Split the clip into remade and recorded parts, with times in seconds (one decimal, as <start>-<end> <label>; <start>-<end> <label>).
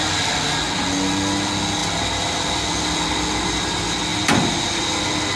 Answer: 0.0-5.4 recorded